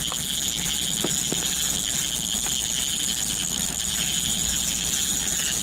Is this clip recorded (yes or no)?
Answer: yes